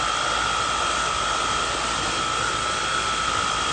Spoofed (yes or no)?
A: no